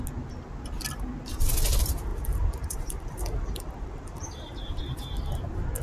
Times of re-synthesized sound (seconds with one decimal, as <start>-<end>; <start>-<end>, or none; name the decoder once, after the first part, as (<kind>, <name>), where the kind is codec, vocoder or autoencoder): 2.1-4.8 (vocoder, BigVGAN v2)